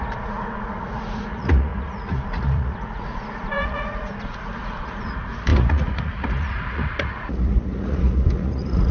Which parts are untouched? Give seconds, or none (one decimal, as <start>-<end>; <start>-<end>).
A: none